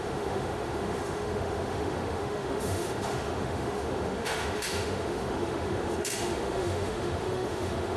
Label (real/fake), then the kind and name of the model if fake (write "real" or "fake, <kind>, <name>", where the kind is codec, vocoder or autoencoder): fake, autoencoder, DAC-VAE